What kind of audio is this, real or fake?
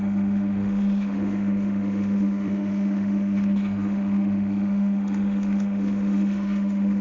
fake